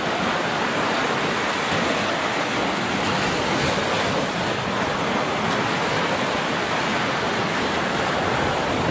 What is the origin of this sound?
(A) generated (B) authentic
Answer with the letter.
B